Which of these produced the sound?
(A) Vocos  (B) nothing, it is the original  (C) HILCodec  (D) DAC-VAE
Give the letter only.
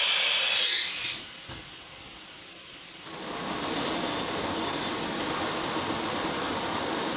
B